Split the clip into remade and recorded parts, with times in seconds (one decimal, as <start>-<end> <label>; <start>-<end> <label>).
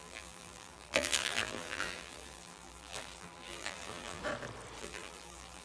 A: 0.0-4.2 remade; 4.2-4.8 recorded; 4.8-5.6 remade